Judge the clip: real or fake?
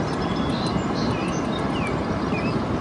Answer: real